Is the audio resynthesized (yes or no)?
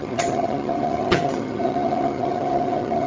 yes